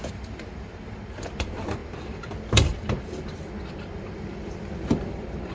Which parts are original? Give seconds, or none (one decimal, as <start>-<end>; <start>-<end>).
none